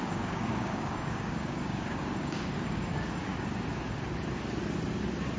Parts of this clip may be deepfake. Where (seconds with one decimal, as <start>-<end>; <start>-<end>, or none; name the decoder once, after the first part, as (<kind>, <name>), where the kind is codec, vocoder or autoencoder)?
0.0-3.3 (codec, DAC)

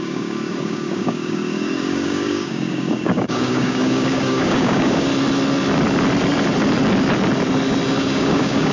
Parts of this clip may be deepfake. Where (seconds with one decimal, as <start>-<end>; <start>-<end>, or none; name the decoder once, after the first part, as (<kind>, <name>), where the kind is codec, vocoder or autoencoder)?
0.0-5.1 (codec, DAC); 8.0-8.7

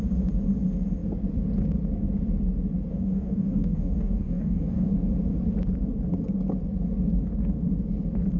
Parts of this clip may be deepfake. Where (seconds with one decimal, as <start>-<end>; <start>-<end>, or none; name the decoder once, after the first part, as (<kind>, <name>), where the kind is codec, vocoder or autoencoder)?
2.9-4.9 (codec, DAC)

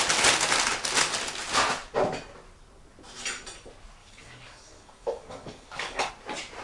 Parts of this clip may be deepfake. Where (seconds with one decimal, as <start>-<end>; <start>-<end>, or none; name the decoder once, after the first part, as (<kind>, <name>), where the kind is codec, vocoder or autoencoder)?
4.0-6.1 (codec, DAC)

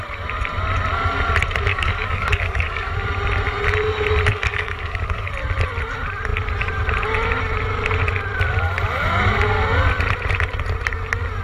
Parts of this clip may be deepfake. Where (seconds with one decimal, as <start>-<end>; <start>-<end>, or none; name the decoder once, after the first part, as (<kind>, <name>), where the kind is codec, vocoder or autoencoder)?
1.7-2.9 (codec, DAC); 4.3-5.3

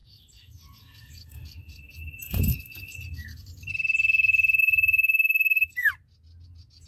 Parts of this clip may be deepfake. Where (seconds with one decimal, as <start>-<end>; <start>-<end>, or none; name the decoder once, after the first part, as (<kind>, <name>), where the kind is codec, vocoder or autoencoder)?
0.0-3.7 (codec, DAC); 4.6-5.9